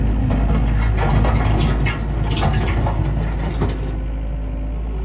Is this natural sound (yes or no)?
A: yes